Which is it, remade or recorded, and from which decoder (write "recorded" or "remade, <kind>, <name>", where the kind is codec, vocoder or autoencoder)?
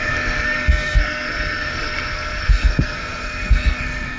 remade, codec, SNAC